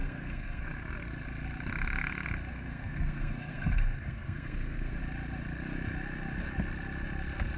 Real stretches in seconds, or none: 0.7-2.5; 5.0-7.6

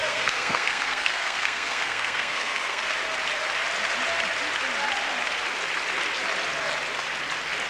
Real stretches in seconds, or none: 2.8-7.7

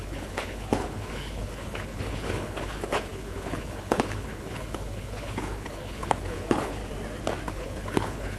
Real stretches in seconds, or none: 6.8-7.5

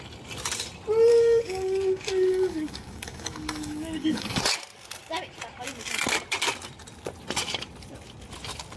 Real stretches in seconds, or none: 0.0-1.1; 4.4-8.8

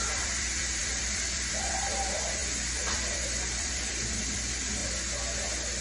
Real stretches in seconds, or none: 4.8-5.8